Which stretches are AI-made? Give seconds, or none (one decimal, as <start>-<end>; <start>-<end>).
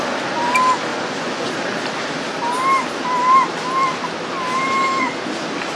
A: 0.9-1.5